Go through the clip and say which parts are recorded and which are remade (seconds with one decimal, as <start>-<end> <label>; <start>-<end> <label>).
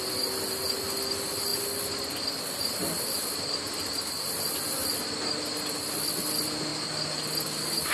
0.0-7.9 recorded